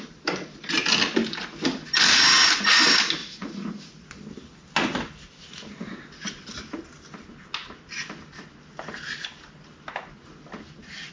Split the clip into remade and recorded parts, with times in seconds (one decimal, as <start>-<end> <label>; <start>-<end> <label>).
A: 0.0-3.2 recorded; 3.2-4.1 remade; 4.1-11.1 recorded

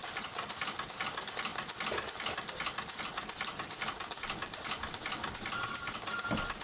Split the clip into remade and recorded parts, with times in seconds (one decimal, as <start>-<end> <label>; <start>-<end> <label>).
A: 0.0-6.6 recorded

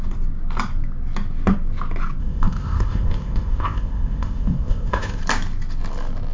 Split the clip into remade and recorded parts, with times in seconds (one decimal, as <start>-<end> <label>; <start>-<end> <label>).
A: 0.0-2.2 recorded; 2.2-5.2 remade; 5.2-6.3 recorded

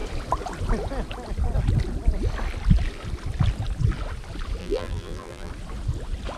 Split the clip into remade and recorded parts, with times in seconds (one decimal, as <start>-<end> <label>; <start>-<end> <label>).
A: 0.0-4.6 recorded; 4.6-5.5 remade; 5.5-6.4 recorded

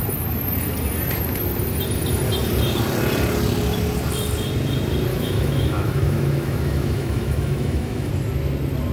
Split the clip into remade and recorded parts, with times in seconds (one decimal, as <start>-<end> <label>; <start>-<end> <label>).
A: 0.0-5.1 recorded; 5.1-8.1 remade; 8.1-8.9 recorded

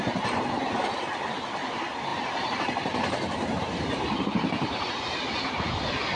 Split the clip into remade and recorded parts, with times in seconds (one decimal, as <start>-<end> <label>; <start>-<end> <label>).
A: 0.0-2.1 recorded; 2.1-5.3 remade; 5.3-6.2 recorded

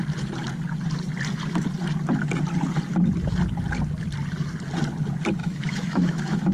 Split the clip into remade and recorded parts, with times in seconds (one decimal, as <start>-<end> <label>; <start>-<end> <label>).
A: 0.0-5.4 recorded; 5.4-6.5 remade

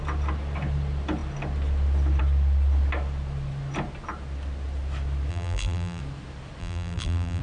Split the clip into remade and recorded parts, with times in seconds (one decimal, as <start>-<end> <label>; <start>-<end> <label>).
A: 0.0-5.3 recorded; 5.3-6.0 remade; 6.0-6.6 recorded; 6.6-7.4 remade